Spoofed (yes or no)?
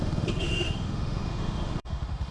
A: yes